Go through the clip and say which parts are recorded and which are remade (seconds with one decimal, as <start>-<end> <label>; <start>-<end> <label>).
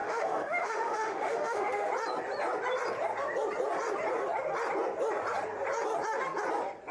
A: 0.0-1.9 remade; 1.9-6.9 recorded